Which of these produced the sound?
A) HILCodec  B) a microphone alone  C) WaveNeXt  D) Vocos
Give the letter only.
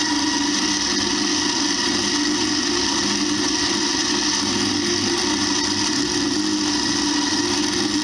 B